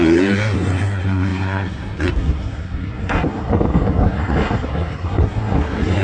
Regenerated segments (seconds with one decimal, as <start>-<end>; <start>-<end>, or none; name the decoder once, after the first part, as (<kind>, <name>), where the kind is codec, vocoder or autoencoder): 0.0-6.0 (codec, SNAC)